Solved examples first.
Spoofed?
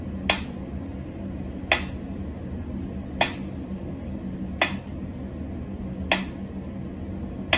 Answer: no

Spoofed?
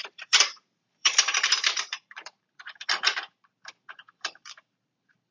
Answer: yes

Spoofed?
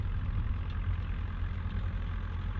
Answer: no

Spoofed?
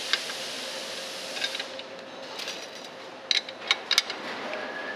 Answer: no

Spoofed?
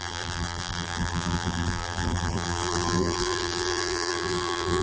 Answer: yes